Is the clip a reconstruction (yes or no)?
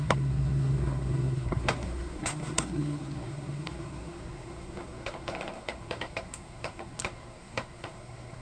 yes